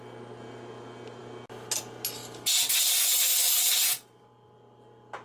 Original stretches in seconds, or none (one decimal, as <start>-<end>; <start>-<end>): 0.0-5.2